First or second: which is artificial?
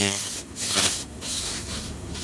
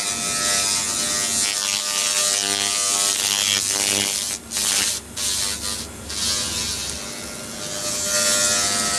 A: first